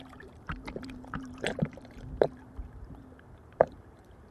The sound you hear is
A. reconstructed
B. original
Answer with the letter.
A